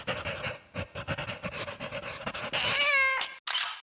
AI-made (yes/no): no